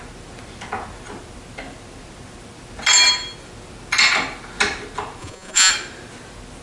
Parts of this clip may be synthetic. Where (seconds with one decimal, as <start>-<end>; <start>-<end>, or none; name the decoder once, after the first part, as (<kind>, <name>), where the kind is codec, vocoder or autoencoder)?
5.2-5.7 (vocoder, Vocos)